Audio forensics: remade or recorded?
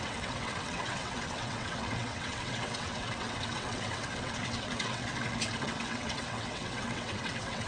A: remade